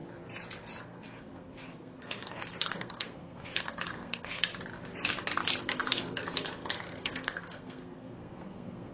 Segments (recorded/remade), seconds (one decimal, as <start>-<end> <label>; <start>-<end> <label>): 0.0-0.8 recorded; 0.8-4.5 remade; 4.5-5.6 recorded; 5.6-8.9 remade